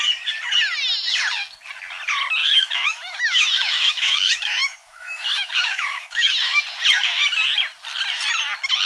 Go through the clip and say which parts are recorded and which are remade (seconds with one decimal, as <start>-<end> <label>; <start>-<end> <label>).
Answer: 0.0-2.4 recorded; 2.4-6.6 remade; 6.6-8.9 recorded